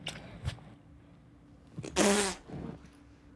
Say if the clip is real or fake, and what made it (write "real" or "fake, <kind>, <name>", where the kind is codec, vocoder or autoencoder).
real